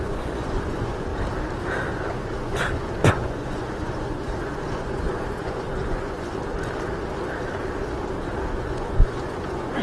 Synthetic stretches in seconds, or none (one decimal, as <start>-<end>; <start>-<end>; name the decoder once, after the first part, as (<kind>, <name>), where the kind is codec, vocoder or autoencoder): 0.0-1.1 (vocoder, Vocos); 1.9-6.3; 8.6-9.8